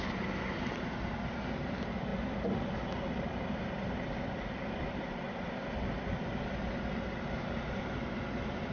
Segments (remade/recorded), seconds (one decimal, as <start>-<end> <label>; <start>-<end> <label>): 0.0-8.7 recorded